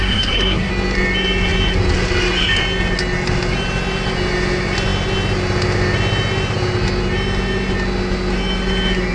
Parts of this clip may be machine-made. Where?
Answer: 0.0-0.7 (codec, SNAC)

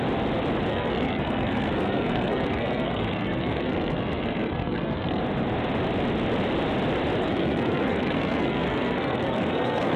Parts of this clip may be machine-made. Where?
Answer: 0.7-5.2 (codec, SNAC); 7.2-10.0

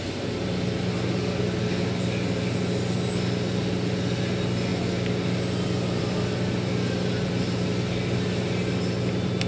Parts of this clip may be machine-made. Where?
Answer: none